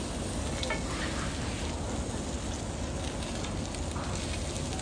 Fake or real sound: real